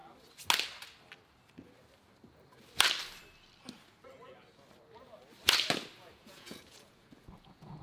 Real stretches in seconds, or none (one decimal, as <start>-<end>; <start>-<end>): 0.0-6.0